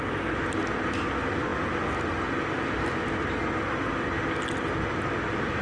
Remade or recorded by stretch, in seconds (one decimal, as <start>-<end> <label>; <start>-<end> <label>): 0.0-5.6 recorded